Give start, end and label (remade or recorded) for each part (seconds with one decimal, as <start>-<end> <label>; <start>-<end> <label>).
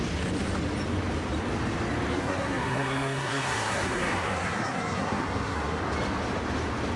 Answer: 0.0-2.1 recorded; 2.1-5.8 remade; 5.8-7.0 recorded